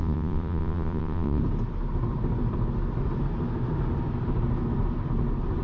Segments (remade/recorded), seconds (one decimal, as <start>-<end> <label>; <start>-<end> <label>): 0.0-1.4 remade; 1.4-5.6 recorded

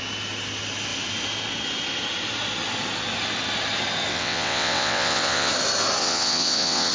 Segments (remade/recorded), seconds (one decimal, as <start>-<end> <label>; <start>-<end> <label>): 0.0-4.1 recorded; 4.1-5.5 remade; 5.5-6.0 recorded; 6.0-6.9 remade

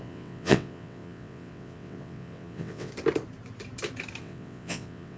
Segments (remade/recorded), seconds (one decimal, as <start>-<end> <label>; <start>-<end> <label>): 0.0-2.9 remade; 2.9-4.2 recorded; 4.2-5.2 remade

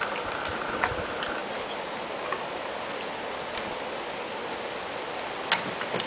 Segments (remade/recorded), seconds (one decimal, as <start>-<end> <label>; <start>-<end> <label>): 0.0-6.1 recorded